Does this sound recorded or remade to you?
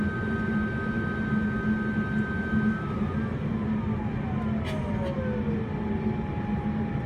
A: recorded